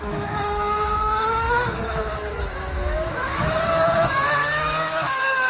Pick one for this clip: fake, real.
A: fake